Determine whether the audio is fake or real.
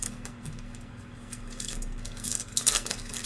fake